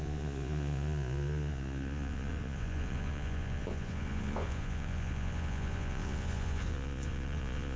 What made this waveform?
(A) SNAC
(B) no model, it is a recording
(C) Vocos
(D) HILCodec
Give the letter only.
C